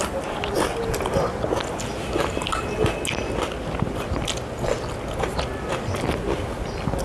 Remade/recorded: recorded